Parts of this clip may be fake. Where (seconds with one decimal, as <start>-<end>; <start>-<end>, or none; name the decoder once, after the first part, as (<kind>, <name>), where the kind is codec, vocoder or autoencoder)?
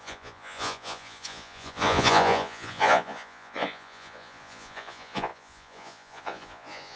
0.0-7.0 (vocoder, Vocos)